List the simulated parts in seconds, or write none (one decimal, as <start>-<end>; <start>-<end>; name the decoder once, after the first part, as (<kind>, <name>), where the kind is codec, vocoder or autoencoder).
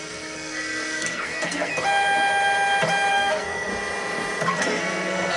0.0-1.7 (codec, SNAC); 3.1-3.7; 4.5-5.4